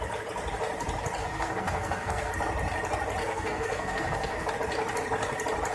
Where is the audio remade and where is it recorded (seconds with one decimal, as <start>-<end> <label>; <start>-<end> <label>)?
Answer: 0.0-1.2 recorded; 1.2-2.3 remade; 2.3-3.2 recorded; 3.2-4.5 remade; 4.5-5.7 recorded